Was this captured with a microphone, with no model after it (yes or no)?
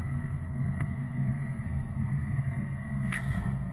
no